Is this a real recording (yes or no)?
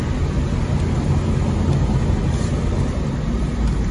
yes